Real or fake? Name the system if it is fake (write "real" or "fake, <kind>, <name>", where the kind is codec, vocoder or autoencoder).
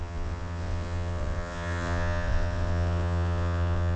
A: fake, vocoder, WaveNeXt